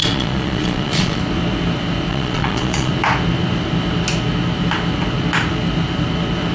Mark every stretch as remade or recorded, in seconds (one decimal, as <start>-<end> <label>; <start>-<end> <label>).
0.0-1.2 remade; 1.2-2.1 recorded; 2.1-2.9 remade; 2.9-6.5 recorded